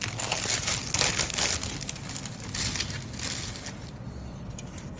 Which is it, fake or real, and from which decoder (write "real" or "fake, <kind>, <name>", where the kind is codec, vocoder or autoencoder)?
real